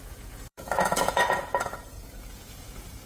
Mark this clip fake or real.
fake